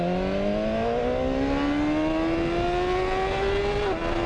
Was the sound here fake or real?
real